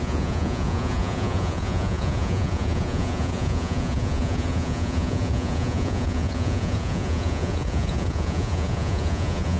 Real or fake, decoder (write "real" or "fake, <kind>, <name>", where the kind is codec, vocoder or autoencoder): fake, vocoder, Vocos